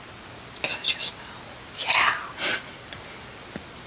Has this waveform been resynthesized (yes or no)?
no